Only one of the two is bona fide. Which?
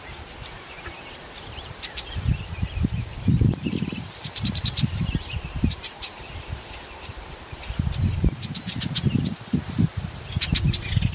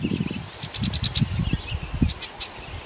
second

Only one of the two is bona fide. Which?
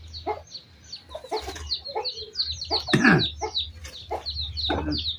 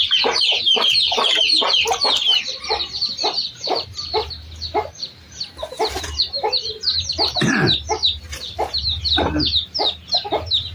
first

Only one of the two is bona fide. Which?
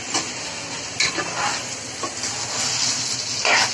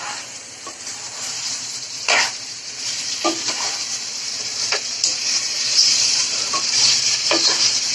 first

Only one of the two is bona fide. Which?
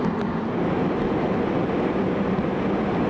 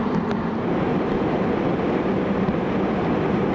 first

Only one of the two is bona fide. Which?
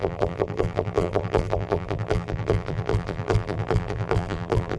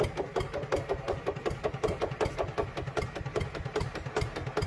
second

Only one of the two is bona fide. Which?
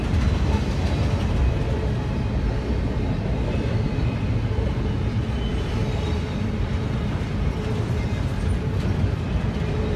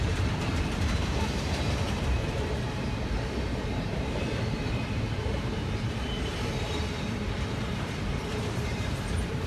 first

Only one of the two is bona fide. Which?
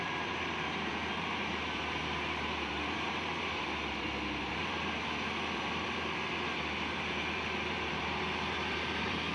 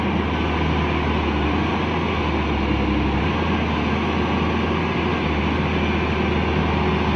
second